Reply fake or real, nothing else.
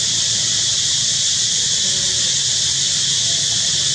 real